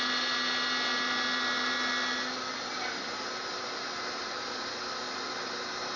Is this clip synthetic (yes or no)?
no